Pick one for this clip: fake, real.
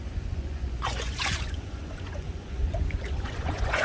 fake